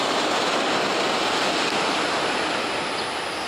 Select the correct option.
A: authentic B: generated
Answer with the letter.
A